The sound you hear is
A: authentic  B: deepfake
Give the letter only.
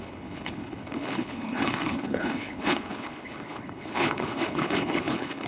B